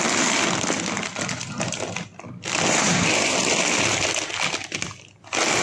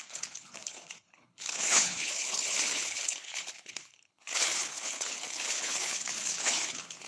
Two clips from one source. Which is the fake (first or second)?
second